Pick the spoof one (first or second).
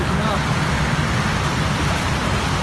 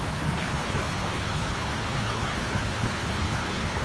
second